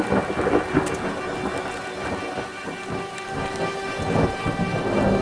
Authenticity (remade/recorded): recorded